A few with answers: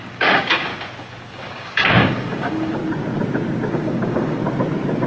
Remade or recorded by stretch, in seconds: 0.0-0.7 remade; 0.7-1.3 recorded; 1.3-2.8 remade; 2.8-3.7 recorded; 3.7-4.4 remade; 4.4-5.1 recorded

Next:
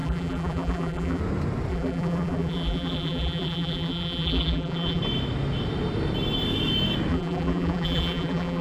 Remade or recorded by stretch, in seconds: 0.0-1.2 remade; 1.2-1.7 recorded; 1.7-5.0 remade; 5.0-7.1 recorded; 7.1-8.6 remade

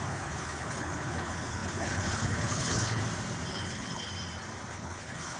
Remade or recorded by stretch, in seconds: 0.0-3.0 remade; 3.0-3.5 recorded; 3.5-4.1 remade; 4.1-4.7 recorded; 4.7-5.4 remade